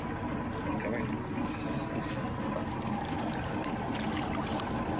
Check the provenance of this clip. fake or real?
real